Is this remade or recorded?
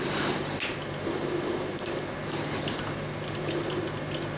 recorded